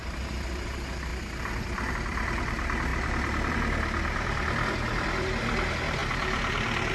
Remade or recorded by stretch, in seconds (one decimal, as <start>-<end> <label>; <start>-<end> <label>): 0.0-6.9 recorded